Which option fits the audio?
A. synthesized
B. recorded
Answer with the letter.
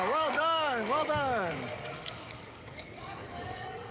A